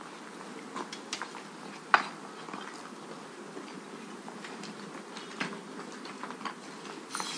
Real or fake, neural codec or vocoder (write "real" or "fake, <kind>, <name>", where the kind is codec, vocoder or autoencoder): real